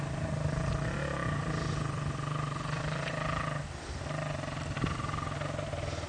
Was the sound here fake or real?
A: real